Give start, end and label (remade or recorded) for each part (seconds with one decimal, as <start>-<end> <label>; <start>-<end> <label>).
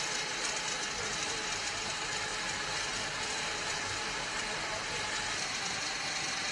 0.0-2.3 remade; 2.3-3.4 recorded; 3.4-6.5 remade